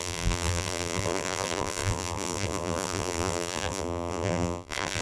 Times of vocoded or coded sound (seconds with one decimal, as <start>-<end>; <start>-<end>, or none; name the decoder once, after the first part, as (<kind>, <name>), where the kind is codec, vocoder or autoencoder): 0.0-5.0 (vocoder, BigVGAN v2)